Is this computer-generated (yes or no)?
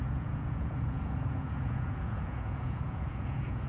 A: yes